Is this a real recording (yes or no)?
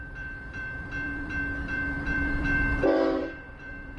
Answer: no